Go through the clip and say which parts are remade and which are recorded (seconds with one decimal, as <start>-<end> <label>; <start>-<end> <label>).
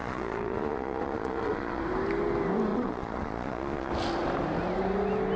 0.0-1.8 remade; 1.8-2.7 recorded; 2.7-3.9 remade; 3.9-5.4 recorded